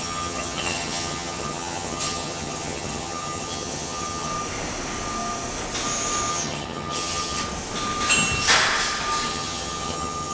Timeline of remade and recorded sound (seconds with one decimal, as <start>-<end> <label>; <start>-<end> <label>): 0.0-4.3 remade; 4.3-6.3 recorded; 6.3-7.4 remade; 7.4-9.3 recorded; 9.3-10.3 remade